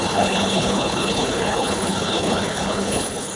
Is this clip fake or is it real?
fake